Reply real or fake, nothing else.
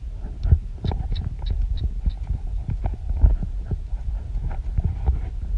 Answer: real